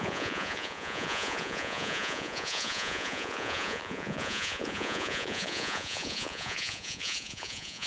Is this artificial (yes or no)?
yes